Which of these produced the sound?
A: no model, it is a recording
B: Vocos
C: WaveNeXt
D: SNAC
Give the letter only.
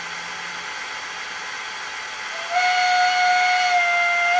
A